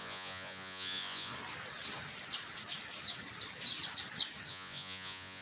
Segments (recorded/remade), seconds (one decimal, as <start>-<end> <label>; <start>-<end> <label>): 0.0-1.3 remade; 1.3-4.5 recorded; 4.5-5.4 remade